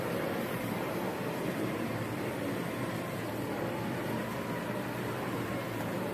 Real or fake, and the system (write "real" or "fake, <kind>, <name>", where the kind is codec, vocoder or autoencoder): real